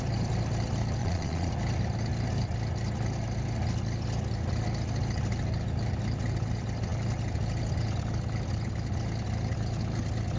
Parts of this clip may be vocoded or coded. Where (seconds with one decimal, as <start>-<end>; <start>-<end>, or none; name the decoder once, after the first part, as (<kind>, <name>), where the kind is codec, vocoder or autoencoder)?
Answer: 1.0-1.5 (vocoder, Vocos)